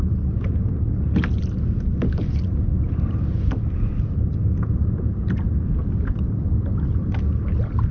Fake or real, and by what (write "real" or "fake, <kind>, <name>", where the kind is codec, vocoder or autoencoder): real